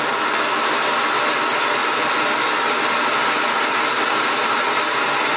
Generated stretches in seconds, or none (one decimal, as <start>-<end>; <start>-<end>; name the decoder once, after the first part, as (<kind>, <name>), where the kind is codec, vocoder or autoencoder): none